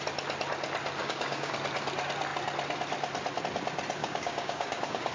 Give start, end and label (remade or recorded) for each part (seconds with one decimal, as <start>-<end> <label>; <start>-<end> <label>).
0.0-1.0 recorded; 1.0-1.5 remade; 1.5-4.0 recorded; 4.0-5.1 remade